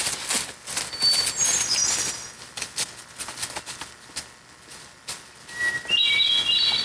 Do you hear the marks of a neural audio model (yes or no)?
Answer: no